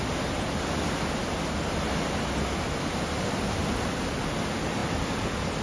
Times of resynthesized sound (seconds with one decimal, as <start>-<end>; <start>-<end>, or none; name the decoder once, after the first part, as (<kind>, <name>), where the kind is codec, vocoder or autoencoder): none